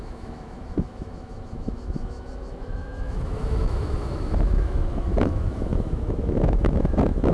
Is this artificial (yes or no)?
yes